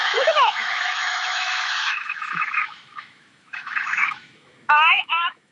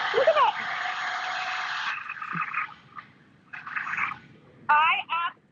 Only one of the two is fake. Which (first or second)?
first